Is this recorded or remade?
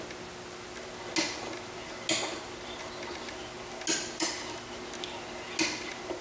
recorded